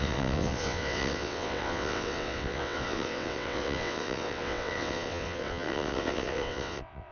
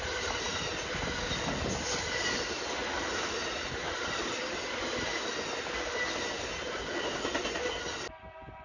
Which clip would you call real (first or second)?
second